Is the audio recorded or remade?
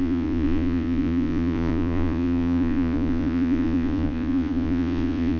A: remade